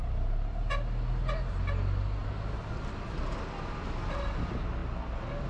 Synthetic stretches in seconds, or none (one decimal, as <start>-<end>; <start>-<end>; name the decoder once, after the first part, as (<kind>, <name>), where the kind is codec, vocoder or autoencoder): none